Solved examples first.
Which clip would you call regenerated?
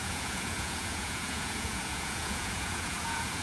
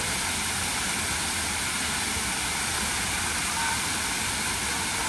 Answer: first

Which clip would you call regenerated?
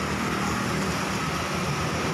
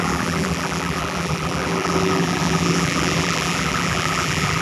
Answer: second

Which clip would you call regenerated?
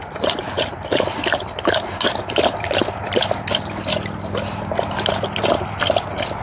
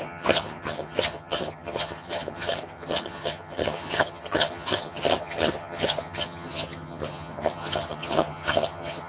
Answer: second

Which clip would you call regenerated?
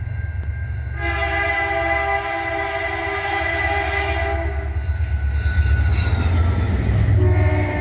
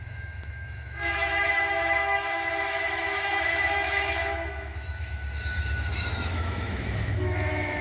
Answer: second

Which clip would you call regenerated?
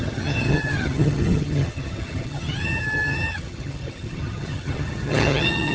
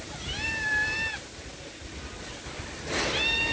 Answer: first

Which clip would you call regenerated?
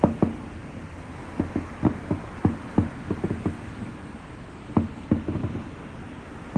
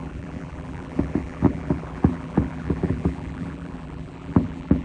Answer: second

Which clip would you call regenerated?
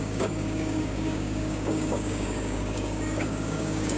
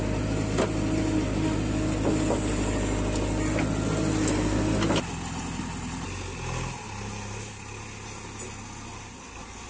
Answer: first